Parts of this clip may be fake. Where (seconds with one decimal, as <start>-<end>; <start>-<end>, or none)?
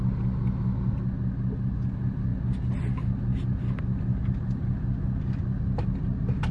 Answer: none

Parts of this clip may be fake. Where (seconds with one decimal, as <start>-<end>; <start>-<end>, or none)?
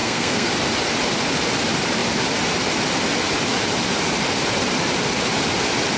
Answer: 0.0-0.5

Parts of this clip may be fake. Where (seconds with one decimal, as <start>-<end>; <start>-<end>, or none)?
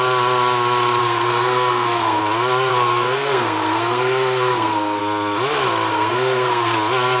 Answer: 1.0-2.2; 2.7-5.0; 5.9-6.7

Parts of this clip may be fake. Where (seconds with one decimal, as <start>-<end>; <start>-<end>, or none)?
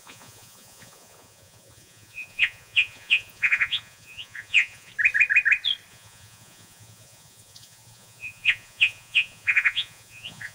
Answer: 0.0-4.9; 5.9-10.5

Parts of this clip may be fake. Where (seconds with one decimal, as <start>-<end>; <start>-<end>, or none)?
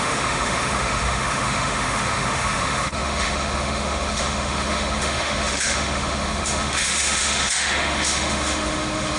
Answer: 0.0-9.2